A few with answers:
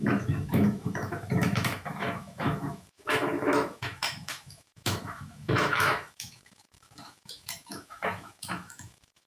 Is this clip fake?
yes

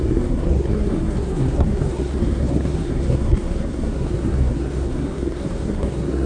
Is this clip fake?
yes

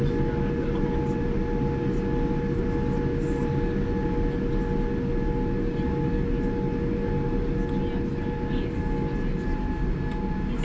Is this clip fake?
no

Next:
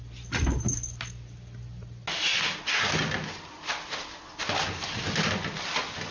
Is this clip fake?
no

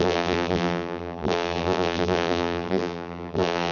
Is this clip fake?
yes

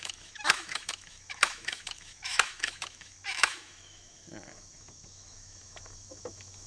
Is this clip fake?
yes